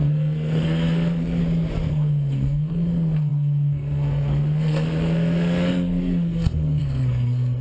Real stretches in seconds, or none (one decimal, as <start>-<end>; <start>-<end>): 1.4-1.9